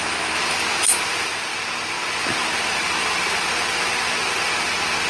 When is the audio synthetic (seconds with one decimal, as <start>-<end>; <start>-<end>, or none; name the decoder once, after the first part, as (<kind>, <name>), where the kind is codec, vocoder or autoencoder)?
none